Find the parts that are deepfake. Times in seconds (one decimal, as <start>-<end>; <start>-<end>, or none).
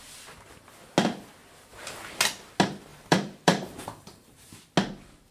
2.9-4.5